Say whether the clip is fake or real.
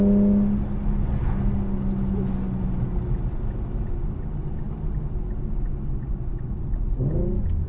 real